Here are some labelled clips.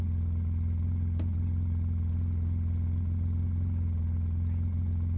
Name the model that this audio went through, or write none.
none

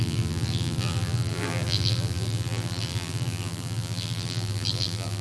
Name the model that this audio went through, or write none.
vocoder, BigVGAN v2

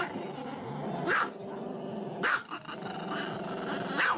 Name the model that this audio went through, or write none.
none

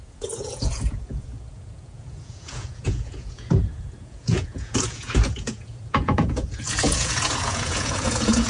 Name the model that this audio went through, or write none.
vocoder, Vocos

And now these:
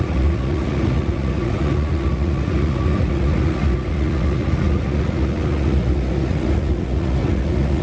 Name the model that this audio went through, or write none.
vocoder, Vocos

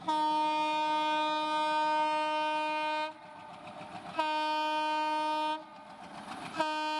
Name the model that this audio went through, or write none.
none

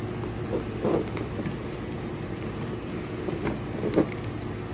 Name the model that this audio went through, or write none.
none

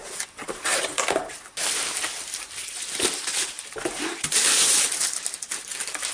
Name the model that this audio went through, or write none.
none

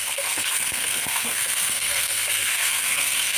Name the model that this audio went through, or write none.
codec, SNAC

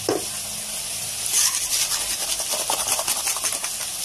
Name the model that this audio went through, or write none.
none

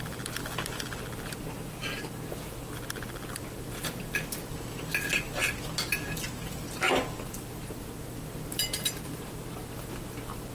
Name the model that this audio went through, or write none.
none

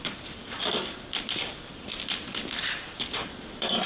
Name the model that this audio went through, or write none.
vocoder, BigVGAN v2